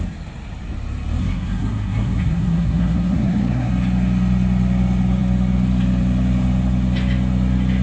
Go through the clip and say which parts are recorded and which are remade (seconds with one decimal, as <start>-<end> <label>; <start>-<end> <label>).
0.0-1.2 recorded; 1.2-3.7 remade; 3.7-7.8 recorded